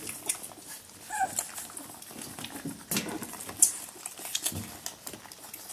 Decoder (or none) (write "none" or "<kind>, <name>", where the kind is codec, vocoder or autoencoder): none